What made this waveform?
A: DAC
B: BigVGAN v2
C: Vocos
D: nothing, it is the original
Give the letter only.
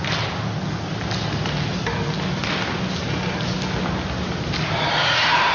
D